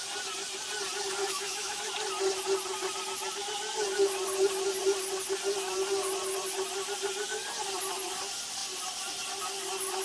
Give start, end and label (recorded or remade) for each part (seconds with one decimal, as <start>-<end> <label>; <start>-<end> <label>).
0.0-1.2 recorded; 1.2-1.8 remade; 1.8-10.0 recorded

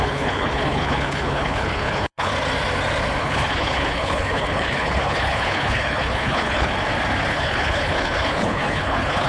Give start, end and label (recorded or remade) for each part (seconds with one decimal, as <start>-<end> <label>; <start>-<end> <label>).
0.0-2.3 remade; 2.3-3.2 recorded; 3.2-6.7 remade; 6.7-7.3 recorded; 7.3-9.3 remade

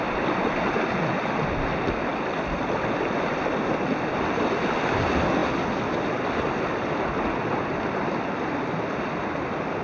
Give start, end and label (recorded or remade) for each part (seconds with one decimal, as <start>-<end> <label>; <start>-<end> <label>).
0.0-9.8 recorded

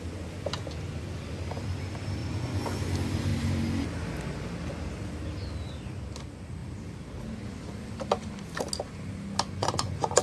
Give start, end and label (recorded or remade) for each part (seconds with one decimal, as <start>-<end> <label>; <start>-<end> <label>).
0.0-2.2 recorded; 2.2-2.8 remade; 2.8-9.6 recorded; 9.6-10.2 remade

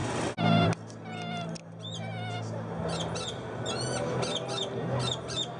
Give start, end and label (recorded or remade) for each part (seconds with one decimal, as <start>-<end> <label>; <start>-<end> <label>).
0.0-5.6 recorded

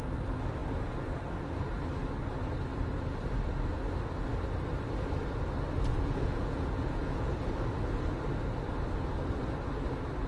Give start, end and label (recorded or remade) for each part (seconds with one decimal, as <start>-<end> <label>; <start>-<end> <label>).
0.0-5.9 recorded; 5.9-7.5 remade; 7.5-10.3 recorded